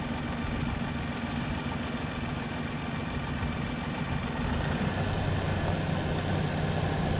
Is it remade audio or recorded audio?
recorded